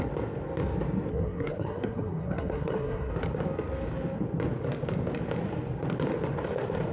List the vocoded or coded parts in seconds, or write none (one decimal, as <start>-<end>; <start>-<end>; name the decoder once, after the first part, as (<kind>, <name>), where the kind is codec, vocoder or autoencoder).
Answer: 1.1-3.1 (codec, SNAC)